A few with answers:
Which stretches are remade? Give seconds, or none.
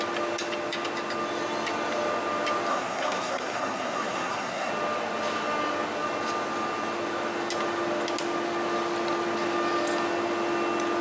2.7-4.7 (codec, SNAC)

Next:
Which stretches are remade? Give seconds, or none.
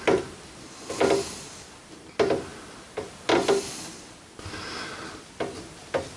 none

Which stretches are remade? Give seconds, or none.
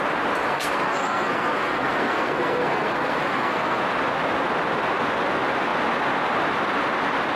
0.4-3.8 (codec, SNAC)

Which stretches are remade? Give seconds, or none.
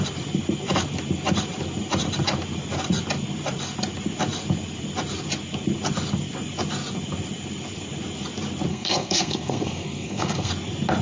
8.7-10.5 (codec, SNAC)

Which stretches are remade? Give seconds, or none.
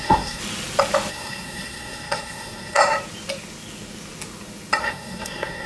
0.0-0.4 (codec, SNAC); 1.1-2.8; 4.8-5.7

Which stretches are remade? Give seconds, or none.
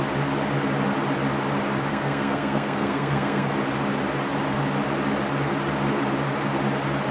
1.9-3.5 (codec, SNAC)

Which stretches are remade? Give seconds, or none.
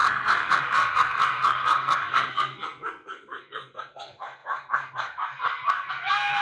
0.0-6.4 (codec, SNAC)